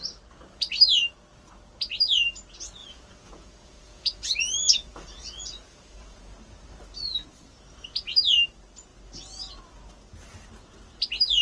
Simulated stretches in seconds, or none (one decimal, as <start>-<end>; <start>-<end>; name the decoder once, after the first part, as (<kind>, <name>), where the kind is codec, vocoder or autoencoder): 2.8-6.2 (vocoder, Vocos)